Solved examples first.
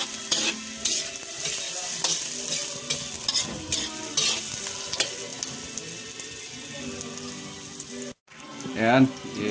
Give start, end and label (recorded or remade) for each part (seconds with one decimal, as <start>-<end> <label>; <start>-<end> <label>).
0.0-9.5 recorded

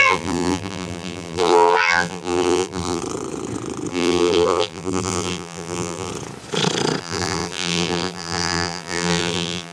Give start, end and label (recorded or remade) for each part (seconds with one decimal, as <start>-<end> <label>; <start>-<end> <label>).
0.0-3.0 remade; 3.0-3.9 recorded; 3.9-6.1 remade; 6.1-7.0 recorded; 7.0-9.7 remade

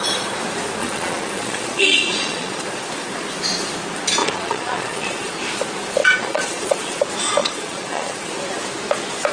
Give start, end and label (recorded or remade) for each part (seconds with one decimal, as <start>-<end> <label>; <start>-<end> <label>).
0.0-0.8 recorded; 0.8-2.6 remade; 2.6-4.2 recorded; 4.2-5.3 remade; 5.3-6.0 recorded; 6.0-7.0 remade; 7.0-7.4 recorded; 7.4-8.3 remade; 8.3-9.3 recorded

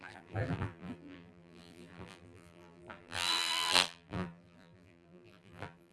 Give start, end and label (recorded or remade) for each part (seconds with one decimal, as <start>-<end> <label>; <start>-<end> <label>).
0.0-5.9 remade

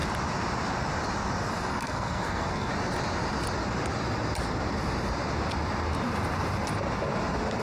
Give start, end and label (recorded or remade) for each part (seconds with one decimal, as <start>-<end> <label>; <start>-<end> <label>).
0.0-1.7 recorded; 1.7-2.7 remade; 2.7-7.6 recorded

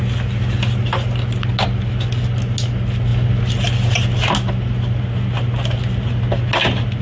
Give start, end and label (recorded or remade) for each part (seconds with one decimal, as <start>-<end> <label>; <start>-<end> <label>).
0.0-7.0 recorded